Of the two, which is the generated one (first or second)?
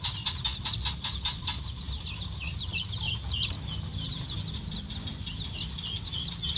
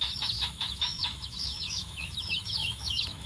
second